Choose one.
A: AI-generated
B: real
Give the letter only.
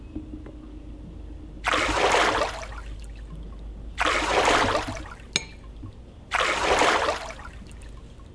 B